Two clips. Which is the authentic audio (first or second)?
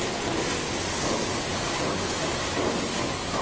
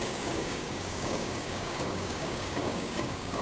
first